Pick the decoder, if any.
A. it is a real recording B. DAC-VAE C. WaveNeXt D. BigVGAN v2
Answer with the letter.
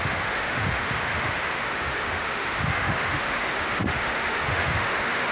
B